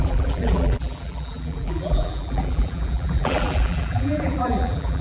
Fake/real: fake